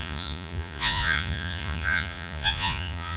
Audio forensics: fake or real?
fake